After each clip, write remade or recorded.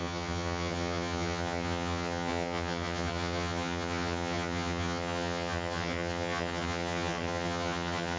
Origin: remade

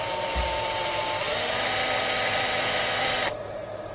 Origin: recorded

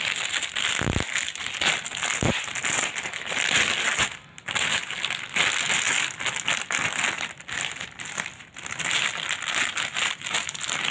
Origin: recorded